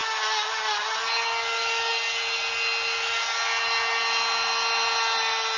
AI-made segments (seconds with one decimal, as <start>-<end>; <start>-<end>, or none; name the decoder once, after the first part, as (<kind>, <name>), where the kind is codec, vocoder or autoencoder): none